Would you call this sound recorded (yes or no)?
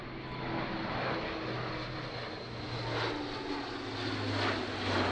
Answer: yes